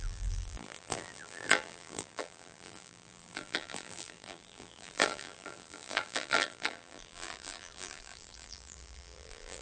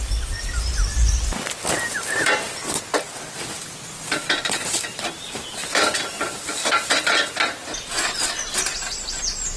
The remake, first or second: first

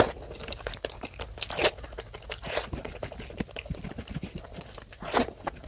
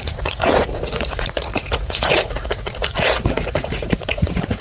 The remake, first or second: second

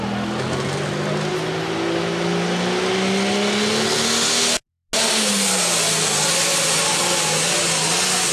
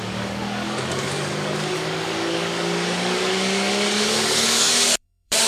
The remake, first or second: second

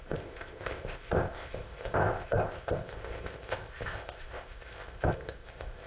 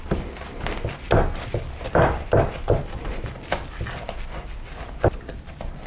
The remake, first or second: first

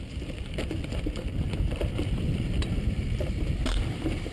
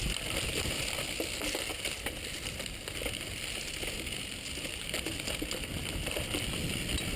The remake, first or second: first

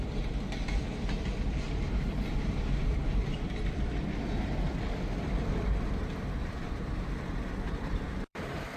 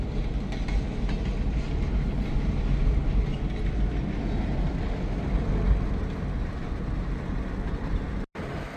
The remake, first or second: first